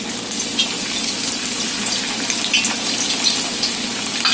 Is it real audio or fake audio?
real